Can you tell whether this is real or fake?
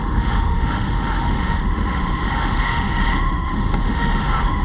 fake